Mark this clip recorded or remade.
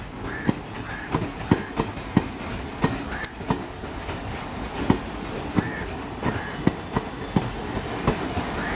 recorded